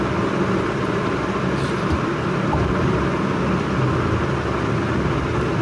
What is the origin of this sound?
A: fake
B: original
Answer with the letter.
B